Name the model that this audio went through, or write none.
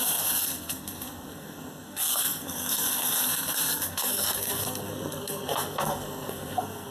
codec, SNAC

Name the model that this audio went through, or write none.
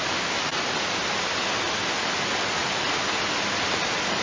none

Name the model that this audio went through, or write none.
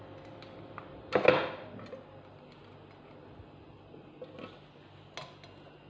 none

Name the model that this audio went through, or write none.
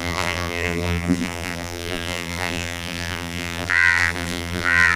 vocoder, BigVGAN v2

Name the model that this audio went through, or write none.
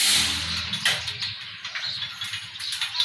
none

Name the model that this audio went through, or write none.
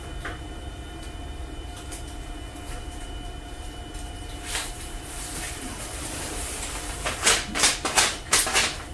vocoder, BigVGAN v2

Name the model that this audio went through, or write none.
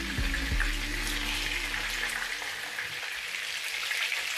none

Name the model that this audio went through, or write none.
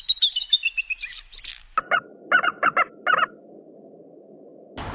none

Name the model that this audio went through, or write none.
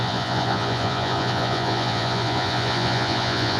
vocoder, Vocos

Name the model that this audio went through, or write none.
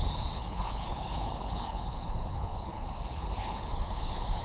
codec, HILCodec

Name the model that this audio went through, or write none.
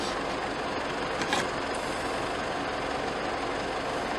none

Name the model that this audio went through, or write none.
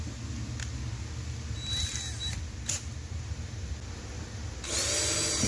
none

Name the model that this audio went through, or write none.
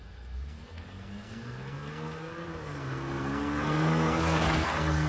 codec, SNAC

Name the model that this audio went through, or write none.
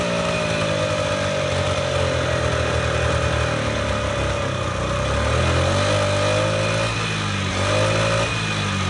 none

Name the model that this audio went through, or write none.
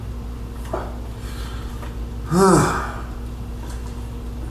none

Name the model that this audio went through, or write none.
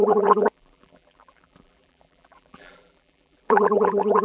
vocoder, BigVGAN v2